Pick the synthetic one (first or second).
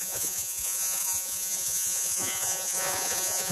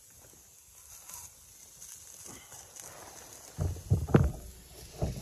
first